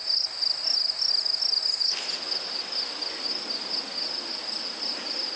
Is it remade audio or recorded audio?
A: recorded